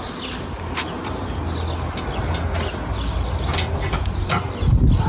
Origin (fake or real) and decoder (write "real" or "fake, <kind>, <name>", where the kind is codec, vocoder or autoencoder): real